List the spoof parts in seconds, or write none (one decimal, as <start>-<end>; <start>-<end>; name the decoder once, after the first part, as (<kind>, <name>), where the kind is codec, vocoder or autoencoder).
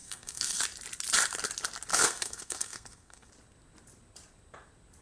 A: 0.0-0.6 (codec, SNAC); 1.9-3.3